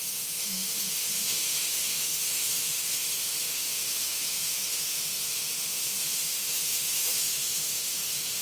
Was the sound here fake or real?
fake